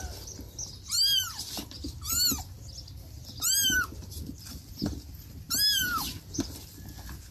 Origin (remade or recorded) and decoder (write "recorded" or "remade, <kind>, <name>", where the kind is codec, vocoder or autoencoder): recorded